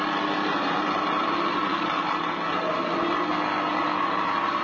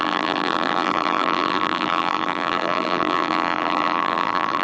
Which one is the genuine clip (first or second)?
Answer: first